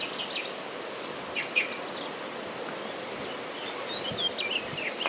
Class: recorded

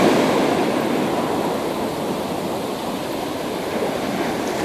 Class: recorded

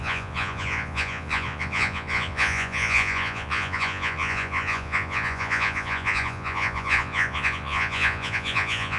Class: remade